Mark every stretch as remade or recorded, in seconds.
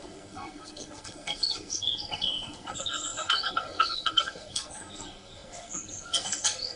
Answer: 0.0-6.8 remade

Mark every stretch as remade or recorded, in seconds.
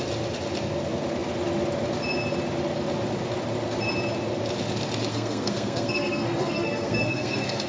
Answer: 0.0-5.1 recorded; 5.1-7.7 remade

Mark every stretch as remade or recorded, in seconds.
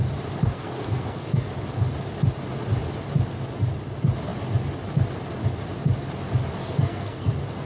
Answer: 0.0-0.4 recorded; 0.4-1.5 remade; 1.5-6.6 recorded; 6.6-7.3 remade; 7.3-7.7 recorded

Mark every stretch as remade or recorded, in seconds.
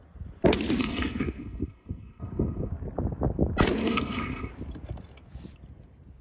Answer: 0.0-0.8 recorded; 0.8-2.7 remade; 2.7-3.8 recorded; 3.8-4.5 remade; 4.5-6.2 recorded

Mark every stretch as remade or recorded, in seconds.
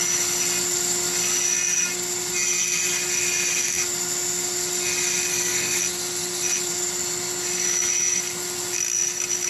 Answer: 0.0-5.3 recorded; 5.3-5.8 remade; 5.8-9.5 recorded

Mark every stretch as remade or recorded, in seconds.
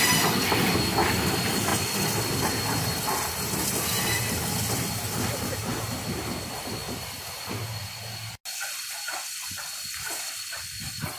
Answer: 0.0-11.2 recorded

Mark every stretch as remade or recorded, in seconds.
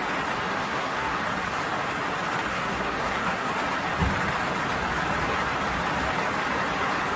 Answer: 0.0-0.6 recorded; 0.6-1.2 remade; 1.2-2.5 recorded; 2.5-3.5 remade; 3.5-7.2 recorded